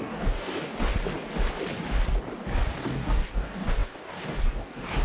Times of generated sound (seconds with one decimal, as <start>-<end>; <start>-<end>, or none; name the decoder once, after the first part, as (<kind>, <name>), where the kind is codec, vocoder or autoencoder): 0.0-0.9 (codec, DAC); 2.7-5.0